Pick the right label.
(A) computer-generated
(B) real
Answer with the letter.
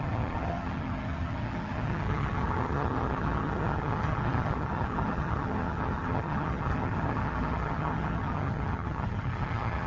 A